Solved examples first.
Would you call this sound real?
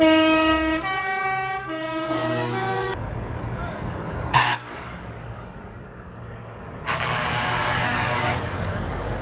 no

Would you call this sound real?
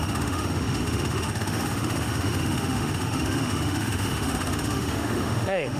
no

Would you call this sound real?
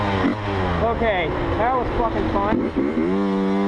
yes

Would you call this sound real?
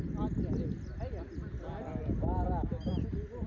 yes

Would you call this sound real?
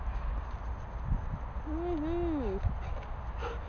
yes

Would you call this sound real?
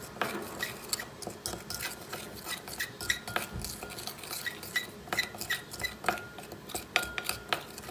yes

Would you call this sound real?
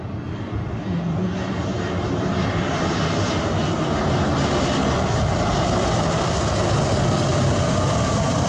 yes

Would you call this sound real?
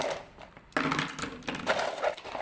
yes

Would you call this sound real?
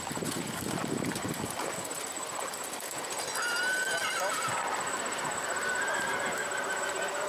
yes